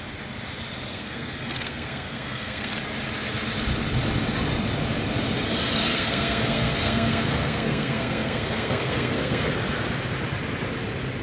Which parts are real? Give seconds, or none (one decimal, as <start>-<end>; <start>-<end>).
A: 0.0-0.9; 2.7-5.9; 9.5-11.2